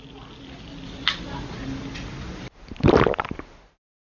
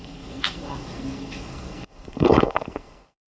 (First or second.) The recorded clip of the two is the first